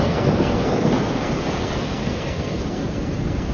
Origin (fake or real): fake